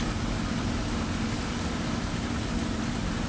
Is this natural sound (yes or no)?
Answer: yes